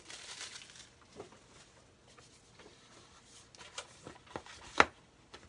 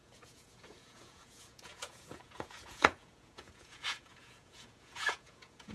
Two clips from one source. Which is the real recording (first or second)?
first